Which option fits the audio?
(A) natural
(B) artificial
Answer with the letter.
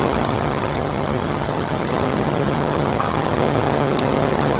B